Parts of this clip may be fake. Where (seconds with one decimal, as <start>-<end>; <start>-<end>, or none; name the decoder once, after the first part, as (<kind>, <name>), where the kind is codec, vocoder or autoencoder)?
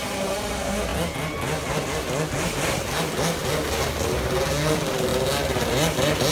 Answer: none